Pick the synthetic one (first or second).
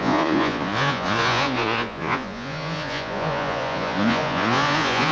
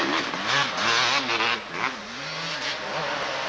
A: first